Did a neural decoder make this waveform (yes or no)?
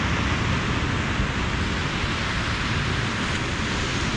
no